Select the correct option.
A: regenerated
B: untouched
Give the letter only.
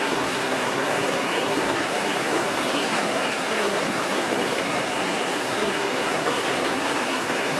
A